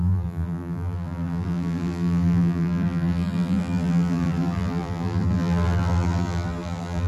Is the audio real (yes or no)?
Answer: no